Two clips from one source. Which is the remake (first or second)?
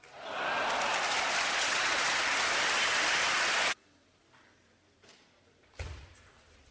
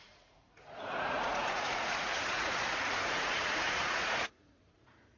second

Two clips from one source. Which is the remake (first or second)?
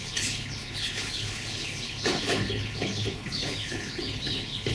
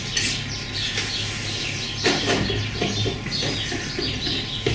first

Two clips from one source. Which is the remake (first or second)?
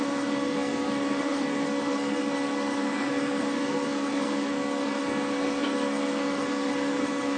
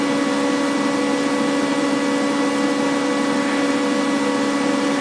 first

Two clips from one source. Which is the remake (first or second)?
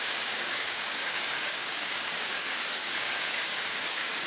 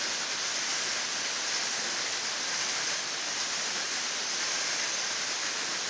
first